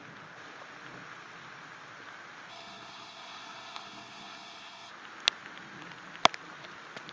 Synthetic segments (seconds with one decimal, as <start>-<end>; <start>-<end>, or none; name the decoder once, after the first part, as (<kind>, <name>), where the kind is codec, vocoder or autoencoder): 2.5-4.9 (codec, SNAC)

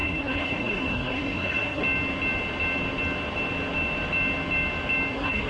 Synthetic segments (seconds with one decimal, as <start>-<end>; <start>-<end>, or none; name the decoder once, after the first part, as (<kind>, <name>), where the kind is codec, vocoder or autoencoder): 0.0-1.8 (codec, SNAC); 5.1-5.5